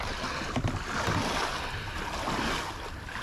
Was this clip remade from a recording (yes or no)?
no